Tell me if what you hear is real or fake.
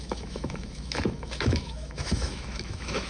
fake